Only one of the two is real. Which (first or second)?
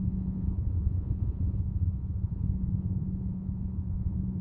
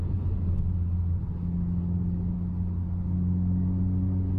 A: second